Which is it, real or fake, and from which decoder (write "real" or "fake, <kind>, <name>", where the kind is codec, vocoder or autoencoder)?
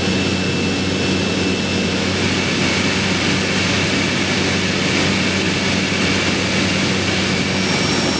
real